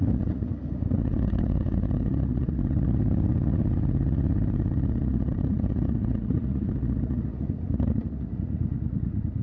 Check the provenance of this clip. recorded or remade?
remade